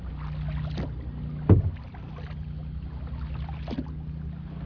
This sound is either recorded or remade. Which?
recorded